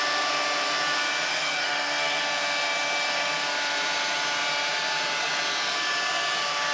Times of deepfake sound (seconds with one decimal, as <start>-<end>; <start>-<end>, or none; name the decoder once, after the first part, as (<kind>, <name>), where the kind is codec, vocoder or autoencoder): 1.3-2.2 (codec, SNAC)